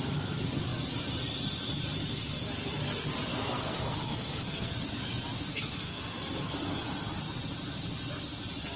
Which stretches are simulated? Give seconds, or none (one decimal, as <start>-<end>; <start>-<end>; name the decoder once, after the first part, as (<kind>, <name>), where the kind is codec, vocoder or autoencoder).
3.3-4.7 (codec, SNAC); 5.5-6.0